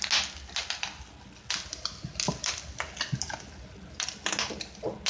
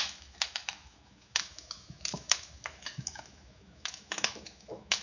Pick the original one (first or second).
first